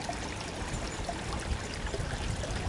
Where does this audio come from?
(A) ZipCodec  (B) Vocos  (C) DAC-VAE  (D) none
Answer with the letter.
D